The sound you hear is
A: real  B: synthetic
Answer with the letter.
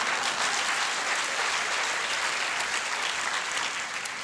A